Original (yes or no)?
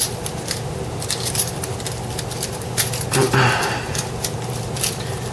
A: yes